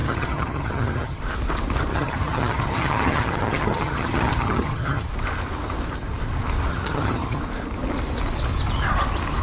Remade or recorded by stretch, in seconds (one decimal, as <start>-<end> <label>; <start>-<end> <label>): 0.0-1.2 remade; 1.2-1.9 recorded; 1.9-5.1 remade; 5.1-6.7 recorded; 6.7-7.4 remade; 7.4-9.4 recorded